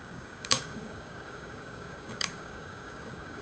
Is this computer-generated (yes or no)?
yes